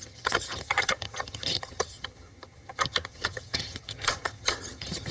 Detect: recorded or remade remade